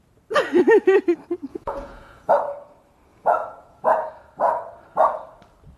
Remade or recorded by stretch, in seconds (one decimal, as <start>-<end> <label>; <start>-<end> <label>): 0.0-1.5 recorded; 1.5-2.3 remade; 2.3-3.1 recorded; 3.1-4.1 remade; 4.1-5.8 recorded